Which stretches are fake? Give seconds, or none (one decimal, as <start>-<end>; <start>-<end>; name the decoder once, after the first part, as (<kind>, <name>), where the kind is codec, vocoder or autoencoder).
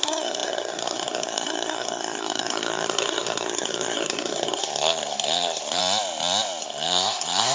0.0-5.8 (codec, SNAC); 6.6-7.5